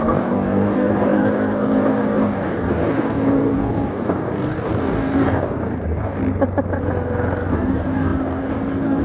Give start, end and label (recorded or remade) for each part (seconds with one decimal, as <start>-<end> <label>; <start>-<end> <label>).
0.0-6.2 remade; 6.2-7.5 recorded; 7.5-9.0 remade